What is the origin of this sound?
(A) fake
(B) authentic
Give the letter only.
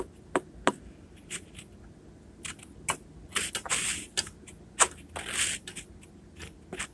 B